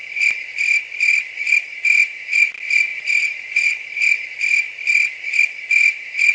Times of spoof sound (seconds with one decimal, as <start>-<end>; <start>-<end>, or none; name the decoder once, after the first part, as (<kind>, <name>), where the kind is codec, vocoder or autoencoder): 0.0-1.7 (vocoder, BigVGAN v2); 2.4-2.9; 3.7-6.3